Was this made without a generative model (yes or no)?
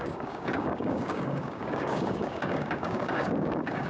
no